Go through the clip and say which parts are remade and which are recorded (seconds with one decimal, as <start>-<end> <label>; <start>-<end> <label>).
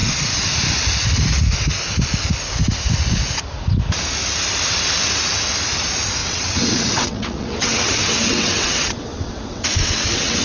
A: 0.0-6.2 recorded; 6.2-10.4 remade